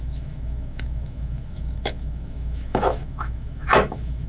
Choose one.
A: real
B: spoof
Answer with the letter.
B